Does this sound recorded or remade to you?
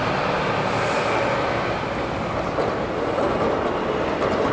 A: recorded